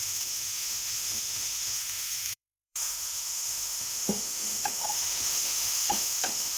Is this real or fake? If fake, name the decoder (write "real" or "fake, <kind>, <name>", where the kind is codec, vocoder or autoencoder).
fake, autoencoder, DAC-VAE